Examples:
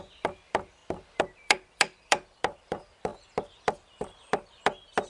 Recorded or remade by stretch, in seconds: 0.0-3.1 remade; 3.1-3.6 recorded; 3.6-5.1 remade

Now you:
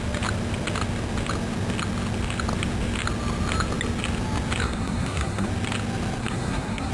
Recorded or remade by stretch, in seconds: 0.0-4.6 recorded; 4.6-5.5 remade; 5.5-6.2 recorded; 6.2-6.9 remade